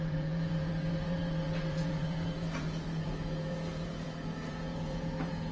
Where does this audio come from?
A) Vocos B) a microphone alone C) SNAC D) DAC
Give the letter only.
A